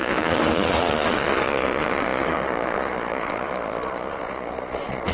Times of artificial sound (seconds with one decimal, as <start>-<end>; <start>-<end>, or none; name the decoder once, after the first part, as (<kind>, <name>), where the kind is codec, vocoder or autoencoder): 0.0-5.1 (vocoder, Vocos)